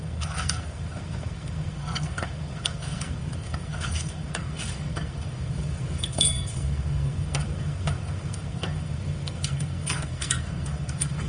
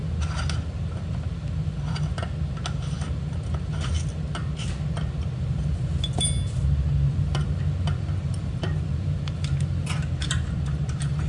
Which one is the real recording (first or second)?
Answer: second